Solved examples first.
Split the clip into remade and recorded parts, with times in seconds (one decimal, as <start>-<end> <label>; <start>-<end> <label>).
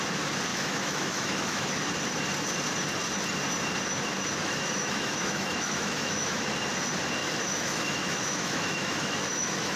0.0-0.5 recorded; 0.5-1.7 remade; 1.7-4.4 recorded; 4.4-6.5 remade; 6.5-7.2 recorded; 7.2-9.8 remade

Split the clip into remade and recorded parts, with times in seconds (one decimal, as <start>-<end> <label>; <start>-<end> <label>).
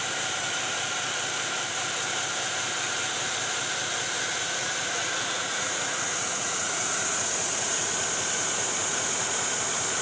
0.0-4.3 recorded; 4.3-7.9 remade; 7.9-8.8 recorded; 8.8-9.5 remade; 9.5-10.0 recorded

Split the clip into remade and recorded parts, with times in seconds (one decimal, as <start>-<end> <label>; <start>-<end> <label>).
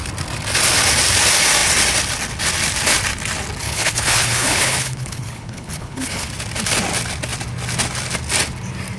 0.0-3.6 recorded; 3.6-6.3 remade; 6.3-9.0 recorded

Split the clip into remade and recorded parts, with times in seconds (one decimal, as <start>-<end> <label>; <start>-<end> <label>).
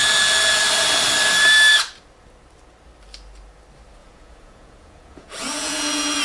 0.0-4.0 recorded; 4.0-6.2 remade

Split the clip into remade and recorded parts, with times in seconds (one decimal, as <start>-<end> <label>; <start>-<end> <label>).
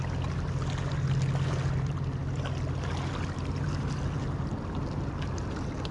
0.0-5.9 recorded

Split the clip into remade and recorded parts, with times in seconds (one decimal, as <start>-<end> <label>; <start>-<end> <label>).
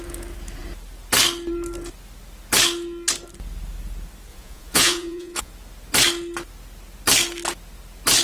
0.0-4.3 recorded; 4.3-5.5 remade; 5.5-8.2 recorded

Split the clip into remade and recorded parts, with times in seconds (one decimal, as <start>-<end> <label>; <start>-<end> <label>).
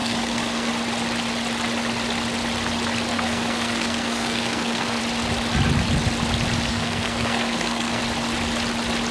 0.0-0.7 remade; 0.7-3.1 recorded; 3.1-5.0 remade; 5.0-6.7 recorded; 6.7-8.0 remade; 8.0-9.1 recorded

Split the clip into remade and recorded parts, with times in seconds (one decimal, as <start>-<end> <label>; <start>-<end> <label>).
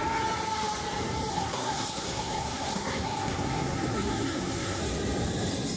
0.0-1.3 recorded; 1.3-4.8 remade; 4.8-5.8 recorded